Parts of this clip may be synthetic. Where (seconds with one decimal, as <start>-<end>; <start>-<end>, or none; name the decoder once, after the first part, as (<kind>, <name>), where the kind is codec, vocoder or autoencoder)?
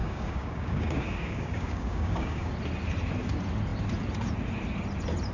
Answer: 0.0-2.5 (codec, DAC)